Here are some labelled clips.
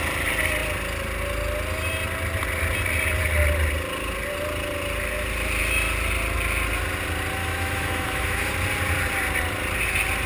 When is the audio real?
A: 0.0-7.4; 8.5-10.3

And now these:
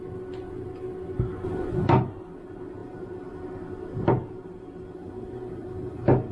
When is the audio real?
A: 0.0-6.3